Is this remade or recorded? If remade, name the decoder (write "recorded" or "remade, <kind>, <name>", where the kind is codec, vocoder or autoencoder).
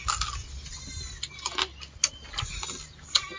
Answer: recorded